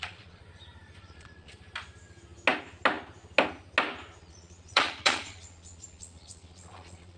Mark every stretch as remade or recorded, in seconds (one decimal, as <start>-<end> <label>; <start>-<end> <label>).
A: 0.0-0.4 remade; 0.4-1.0 recorded; 1.0-1.5 remade; 1.5-4.2 recorded; 4.2-7.2 remade